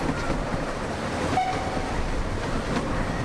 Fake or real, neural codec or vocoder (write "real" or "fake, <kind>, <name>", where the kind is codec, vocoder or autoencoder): real